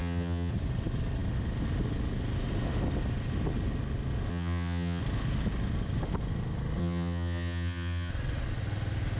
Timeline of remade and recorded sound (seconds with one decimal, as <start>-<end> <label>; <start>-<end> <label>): 0.0-0.5 remade; 0.5-4.3 recorded; 4.3-5.0 remade; 5.0-6.8 recorded; 6.8-8.1 remade; 8.1-9.2 recorded